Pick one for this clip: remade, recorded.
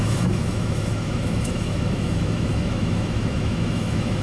remade